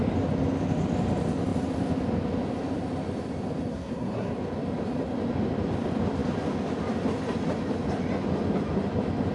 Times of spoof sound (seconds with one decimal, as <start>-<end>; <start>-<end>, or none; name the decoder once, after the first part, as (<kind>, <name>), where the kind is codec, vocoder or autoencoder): 3.7-4.3 (codec, SNAC)

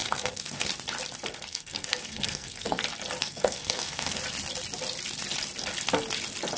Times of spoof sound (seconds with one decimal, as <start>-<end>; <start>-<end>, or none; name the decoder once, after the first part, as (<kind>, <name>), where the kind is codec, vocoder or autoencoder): 0.0-0.7 (codec, SNAC); 1.5-2.8; 3.2-4.2

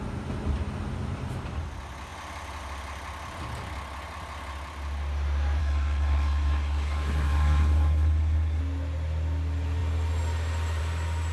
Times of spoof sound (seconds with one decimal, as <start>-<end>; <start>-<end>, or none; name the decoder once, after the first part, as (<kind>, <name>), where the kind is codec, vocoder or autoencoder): 5.6-8.6 (codec, SNAC)

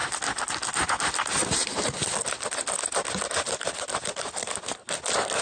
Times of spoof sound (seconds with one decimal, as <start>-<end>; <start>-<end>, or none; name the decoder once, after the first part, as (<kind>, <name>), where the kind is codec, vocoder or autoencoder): none

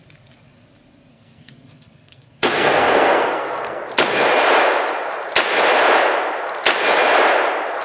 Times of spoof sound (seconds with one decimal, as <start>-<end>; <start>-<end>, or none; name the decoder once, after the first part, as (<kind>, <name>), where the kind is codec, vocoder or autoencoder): 1.1-3.8 (codec, SNAC)

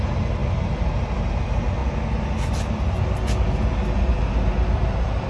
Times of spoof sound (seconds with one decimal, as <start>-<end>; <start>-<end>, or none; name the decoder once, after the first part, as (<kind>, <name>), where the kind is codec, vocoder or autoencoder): none

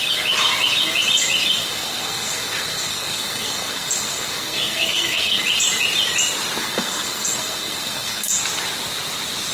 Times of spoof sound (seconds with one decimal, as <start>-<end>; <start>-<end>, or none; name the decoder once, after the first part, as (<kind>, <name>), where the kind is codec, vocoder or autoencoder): 1.6-5.4 (codec, SNAC); 6.6-8.4